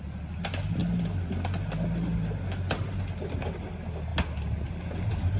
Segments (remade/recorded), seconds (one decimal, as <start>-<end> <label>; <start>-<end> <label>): 0.0-5.4 recorded